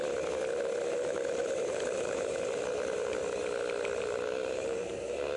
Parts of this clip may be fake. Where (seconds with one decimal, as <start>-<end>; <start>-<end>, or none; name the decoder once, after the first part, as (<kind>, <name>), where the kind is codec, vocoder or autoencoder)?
0.9-3.2 (vocoder, BigVGAN v2); 4.0-5.4